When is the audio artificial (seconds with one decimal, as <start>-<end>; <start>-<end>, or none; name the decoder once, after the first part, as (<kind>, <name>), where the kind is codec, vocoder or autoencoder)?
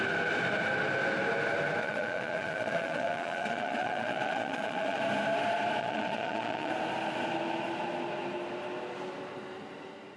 1.8-5.0 (vocoder, Vocos); 5.8-6.7